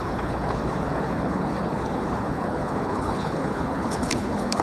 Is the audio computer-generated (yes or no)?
yes